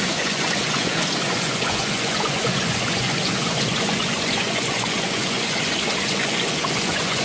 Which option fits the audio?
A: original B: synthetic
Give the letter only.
B